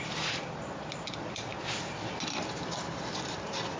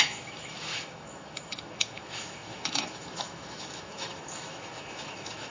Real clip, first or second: first